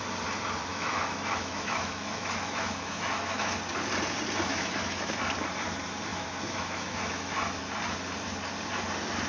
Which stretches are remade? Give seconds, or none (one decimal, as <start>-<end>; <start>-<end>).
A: 0.7-3.5; 4.5-5.1; 6.1-7.6